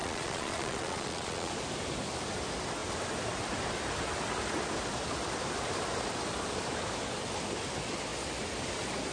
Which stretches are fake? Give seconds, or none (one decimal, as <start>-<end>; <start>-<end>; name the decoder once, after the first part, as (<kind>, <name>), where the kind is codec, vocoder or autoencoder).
0.0-1.5 (vocoder, Vocos)